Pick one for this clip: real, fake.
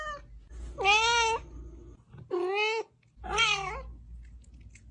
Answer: real